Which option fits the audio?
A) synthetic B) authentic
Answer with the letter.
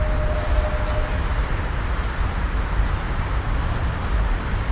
B